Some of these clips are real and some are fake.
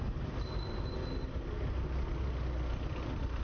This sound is real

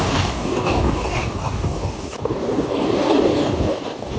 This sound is fake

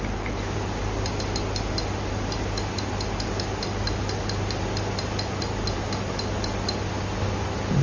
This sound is real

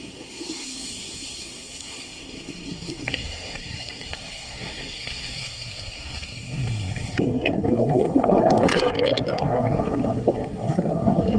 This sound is fake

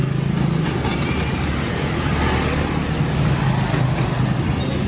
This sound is real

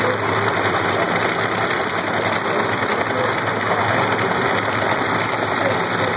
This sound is real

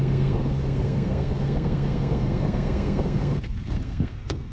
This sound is fake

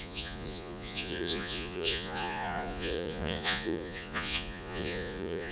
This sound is fake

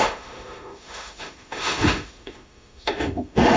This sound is fake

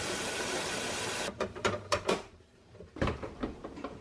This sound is fake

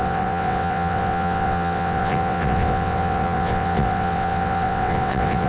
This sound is fake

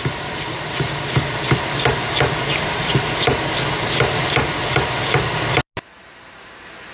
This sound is real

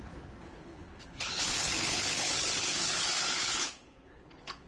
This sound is fake